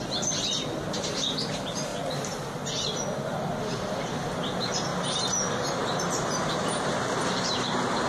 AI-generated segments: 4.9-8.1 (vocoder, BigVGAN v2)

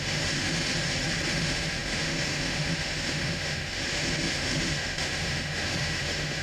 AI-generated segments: 0.0-0.7 (autoencoder, DAC-VAE); 1.3-6.4

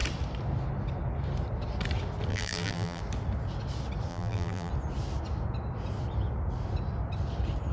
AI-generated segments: 2.3-3.0 (vocoder, BigVGAN v2); 4.1-4.7

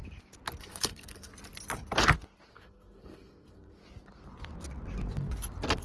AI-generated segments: 0.6-1.3 (codec, SNAC); 2.5-3.8

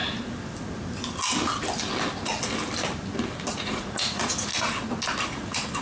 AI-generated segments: 3.5-4.5 (vocoder, Vocos); 5.2-5.8